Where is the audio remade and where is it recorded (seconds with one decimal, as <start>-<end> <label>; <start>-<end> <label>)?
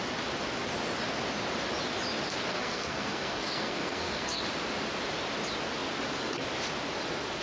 0.0-2.5 recorded; 2.5-4.4 remade; 4.4-7.4 recorded